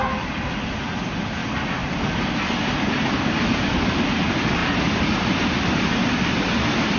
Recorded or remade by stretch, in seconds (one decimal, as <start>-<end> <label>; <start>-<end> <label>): 0.0-7.0 recorded

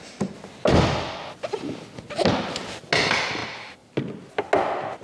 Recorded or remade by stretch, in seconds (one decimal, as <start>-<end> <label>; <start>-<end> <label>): 0.0-5.0 recorded

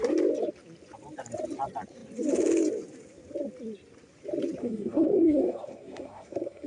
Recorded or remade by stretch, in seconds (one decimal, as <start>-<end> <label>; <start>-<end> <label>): 0.0-4.6 recorded; 4.6-6.7 remade

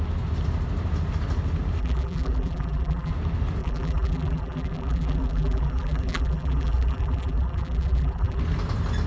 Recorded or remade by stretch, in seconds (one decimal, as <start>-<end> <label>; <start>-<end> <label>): 0.0-1.8 recorded; 1.8-3.1 remade; 3.1-3.6 recorded; 3.6-8.4 remade; 8.4-9.1 recorded

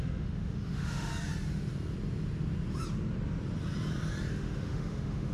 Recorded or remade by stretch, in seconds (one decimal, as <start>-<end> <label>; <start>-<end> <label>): 0.0-1.1 remade; 1.1-4.3 recorded; 4.3-5.3 remade

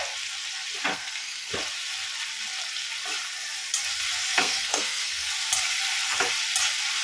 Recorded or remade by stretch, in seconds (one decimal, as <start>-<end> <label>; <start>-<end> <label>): 0.0-0.9 recorded; 0.9-1.5 remade; 1.5-4.3 recorded; 4.3-5.3 remade; 5.3-7.0 recorded